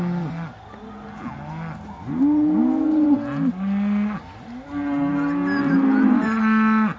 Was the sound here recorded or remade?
recorded